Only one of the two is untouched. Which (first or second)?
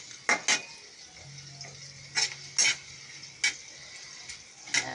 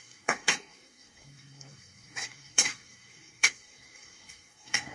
first